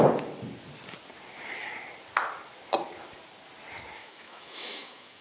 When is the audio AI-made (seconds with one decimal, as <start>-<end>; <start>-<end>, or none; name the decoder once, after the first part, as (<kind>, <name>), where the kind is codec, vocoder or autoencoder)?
4.0-5.2 (autoencoder, DAC-VAE)